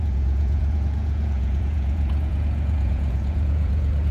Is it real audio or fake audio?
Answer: fake